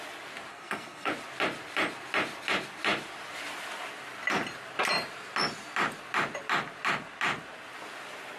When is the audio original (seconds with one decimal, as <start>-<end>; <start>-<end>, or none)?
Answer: 0.0-0.5; 1.1-8.4